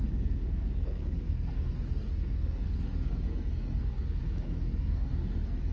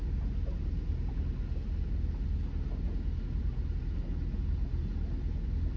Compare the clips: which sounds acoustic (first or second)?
second